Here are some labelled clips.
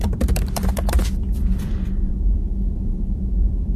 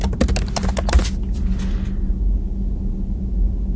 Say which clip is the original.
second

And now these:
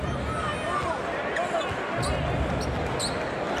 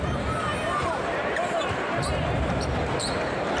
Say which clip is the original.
first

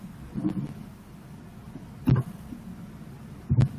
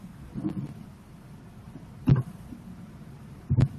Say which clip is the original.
first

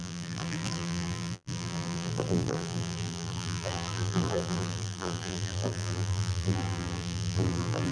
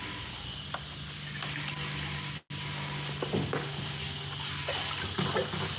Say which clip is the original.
second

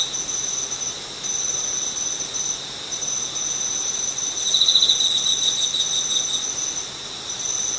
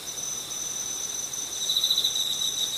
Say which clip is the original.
first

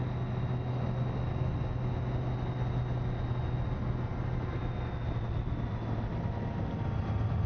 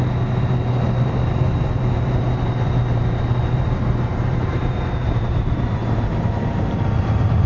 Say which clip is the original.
first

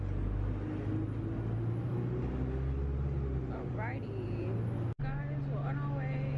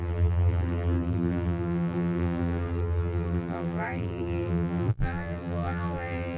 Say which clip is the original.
first